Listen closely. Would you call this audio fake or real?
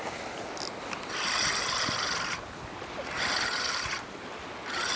real